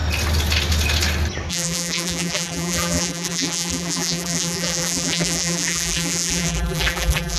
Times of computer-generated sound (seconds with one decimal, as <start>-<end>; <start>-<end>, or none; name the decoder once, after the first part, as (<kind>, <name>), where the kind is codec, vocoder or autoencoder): 1.5-7.4 (vocoder, BigVGAN v2)